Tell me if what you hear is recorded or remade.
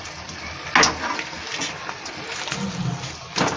recorded